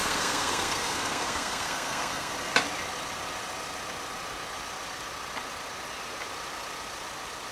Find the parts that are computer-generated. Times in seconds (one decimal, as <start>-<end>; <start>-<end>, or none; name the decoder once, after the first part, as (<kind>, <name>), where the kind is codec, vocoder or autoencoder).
0.0-2.3 (codec, SNAC)